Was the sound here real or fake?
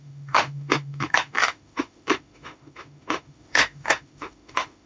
fake